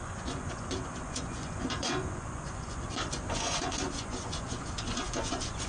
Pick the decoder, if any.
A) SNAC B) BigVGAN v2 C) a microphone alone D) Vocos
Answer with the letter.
D